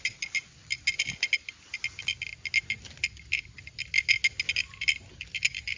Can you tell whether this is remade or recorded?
recorded